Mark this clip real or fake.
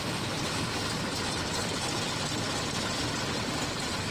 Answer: real